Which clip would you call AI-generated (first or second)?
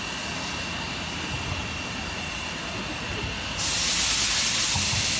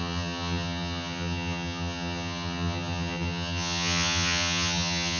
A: second